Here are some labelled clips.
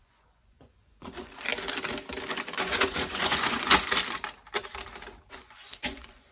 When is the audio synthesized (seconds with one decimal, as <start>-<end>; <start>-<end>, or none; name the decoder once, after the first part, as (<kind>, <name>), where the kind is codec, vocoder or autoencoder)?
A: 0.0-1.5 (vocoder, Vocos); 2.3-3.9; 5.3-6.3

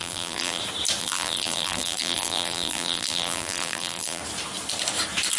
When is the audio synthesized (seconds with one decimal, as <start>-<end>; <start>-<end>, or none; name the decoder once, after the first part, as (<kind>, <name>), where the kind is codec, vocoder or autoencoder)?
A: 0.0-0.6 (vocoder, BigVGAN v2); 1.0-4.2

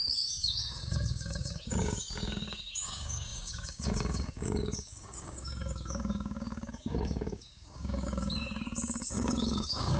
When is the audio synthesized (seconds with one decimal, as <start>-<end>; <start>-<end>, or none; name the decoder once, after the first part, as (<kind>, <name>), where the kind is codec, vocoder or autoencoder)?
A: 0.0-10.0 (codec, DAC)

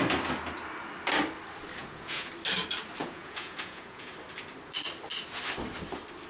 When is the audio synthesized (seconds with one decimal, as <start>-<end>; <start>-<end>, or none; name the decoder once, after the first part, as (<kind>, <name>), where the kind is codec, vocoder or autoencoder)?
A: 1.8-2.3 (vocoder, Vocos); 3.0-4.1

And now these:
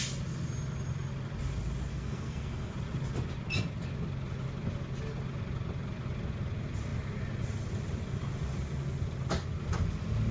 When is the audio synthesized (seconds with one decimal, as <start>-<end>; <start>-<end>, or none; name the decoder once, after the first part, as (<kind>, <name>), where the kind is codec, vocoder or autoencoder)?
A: 1.9-2.7 (codec, SNAC)

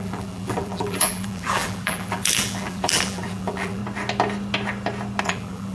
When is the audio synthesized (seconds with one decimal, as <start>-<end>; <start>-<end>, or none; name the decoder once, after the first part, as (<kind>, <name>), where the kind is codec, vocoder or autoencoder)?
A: 0.0-3.8 (vocoder, BigVGAN v2); 5.2-5.7

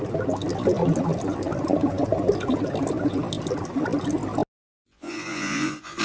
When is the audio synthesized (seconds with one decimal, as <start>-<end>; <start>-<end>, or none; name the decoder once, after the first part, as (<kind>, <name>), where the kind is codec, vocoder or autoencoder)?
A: 4.8-6.0 (vocoder, Vocos)

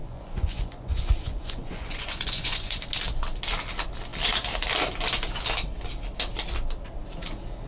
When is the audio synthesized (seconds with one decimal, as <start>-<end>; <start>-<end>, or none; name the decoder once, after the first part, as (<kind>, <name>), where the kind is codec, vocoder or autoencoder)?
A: 0.0-2.8 (vocoder, Vocos)